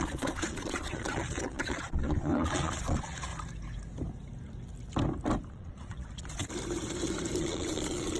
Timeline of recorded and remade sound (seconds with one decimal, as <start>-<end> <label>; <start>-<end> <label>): 0.0-3.3 remade; 3.3-5.5 recorded; 5.5-6.4 remade; 6.4-7.4 recorded; 7.4-8.2 remade